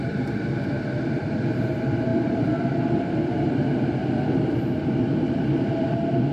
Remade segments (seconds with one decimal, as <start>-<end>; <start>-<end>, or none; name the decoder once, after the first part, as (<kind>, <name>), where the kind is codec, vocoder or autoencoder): 0.0-6.3 (vocoder, BigVGAN v2)